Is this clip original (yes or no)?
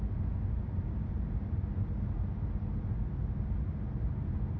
yes